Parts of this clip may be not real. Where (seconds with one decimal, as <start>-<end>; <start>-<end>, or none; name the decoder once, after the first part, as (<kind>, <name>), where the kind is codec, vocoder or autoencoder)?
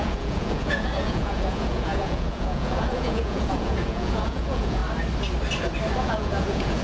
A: 0.0-4.8 (vocoder, Vocos); 6.0-6.8